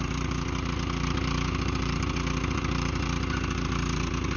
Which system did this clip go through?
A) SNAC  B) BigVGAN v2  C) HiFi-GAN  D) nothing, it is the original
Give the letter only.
B